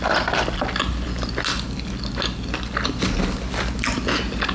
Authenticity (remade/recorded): recorded